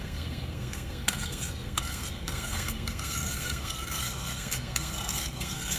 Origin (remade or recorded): remade